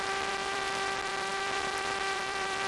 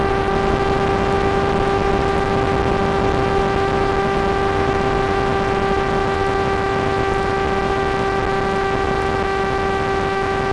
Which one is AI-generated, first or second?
first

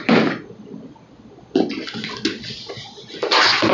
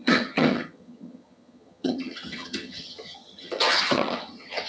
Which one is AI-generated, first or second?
second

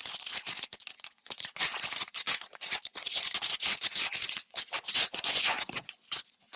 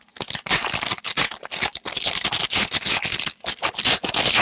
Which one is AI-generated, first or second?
first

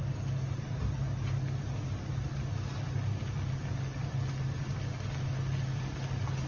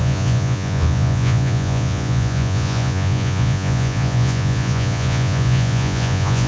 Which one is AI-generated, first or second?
second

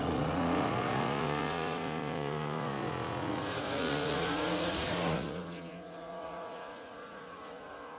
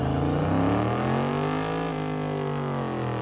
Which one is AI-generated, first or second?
first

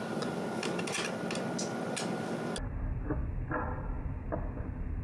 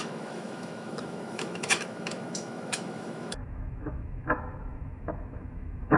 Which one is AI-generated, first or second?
second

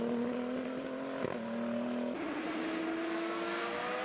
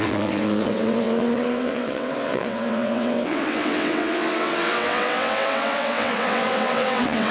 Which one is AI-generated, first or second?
second